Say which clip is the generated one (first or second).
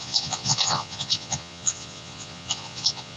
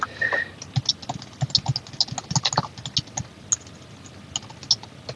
first